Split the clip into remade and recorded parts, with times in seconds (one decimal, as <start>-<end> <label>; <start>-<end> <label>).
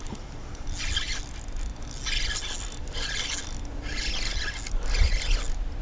0.0-5.8 recorded